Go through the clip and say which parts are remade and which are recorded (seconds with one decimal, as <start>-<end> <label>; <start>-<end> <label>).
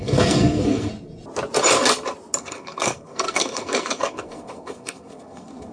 0.0-0.9 remade; 0.9-2.4 recorded; 2.4-5.7 remade